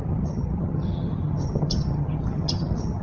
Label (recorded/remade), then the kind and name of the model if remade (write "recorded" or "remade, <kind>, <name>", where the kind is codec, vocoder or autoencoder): remade, vocoder, HiFi-GAN